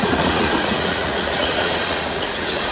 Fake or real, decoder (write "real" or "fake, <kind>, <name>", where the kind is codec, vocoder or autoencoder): fake, vocoder, Vocos